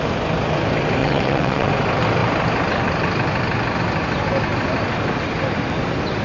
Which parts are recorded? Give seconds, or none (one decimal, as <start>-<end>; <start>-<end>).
0.0-1.0; 1.7-6.2